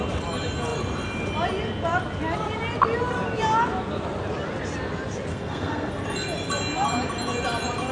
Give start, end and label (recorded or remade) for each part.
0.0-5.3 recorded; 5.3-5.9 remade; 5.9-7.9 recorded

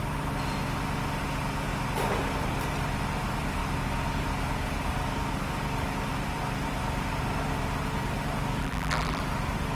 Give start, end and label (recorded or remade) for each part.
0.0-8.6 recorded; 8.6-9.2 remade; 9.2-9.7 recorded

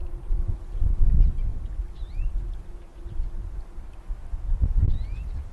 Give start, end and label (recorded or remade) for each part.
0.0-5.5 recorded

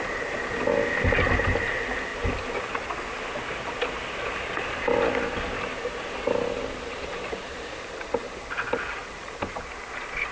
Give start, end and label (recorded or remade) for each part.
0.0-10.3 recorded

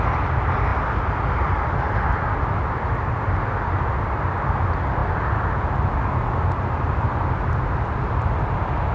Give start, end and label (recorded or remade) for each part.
0.0-8.9 recorded

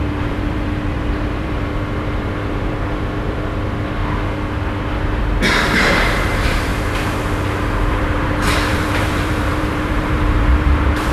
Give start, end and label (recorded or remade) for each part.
0.0-4.0 remade; 4.0-4.8 recorded; 4.8-6.7 remade; 6.7-7.9 recorded; 7.9-11.1 remade